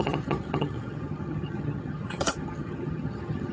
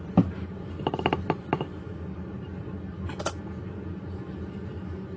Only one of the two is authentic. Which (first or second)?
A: second